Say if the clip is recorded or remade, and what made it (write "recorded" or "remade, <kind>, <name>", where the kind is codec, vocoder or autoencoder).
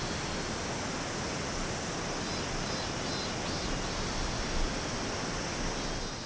recorded